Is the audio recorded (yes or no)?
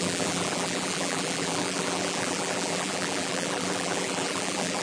no